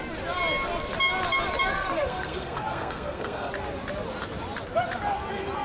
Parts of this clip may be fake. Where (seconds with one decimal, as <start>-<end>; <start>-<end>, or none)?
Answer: 1.7-3.5

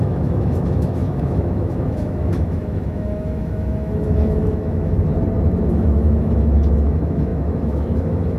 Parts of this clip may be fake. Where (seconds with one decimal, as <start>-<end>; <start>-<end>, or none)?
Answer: 0.0-5.1; 5.7-8.4

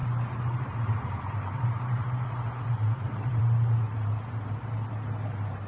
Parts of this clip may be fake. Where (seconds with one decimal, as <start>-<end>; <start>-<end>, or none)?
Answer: 0.0-3.4